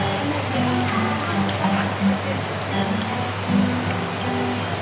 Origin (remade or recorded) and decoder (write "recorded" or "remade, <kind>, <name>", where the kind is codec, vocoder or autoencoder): recorded